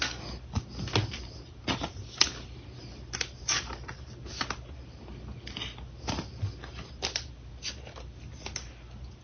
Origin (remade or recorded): recorded